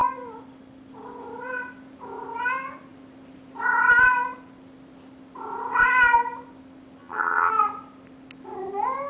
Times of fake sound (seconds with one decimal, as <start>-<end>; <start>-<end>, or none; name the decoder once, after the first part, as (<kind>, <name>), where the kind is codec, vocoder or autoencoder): 7.0-7.5 (vocoder, HiFi-GAN)

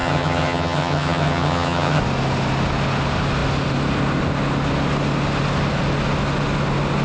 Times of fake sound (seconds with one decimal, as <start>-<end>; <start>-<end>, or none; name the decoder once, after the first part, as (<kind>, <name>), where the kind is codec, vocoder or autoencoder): 0.0-2.0 (vocoder, HiFi-GAN)

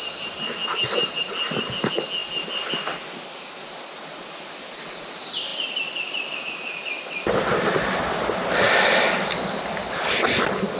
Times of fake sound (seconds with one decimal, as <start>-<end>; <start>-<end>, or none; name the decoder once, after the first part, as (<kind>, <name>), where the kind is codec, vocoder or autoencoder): none

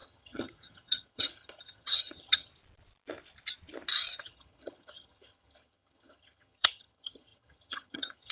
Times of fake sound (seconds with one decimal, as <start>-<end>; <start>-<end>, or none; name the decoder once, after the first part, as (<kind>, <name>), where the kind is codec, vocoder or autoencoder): 0.0-2.5 (vocoder, HiFi-GAN); 4.2-8.3

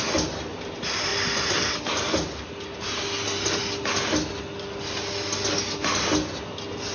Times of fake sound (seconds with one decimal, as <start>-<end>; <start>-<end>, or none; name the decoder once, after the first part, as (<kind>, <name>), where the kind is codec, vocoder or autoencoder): none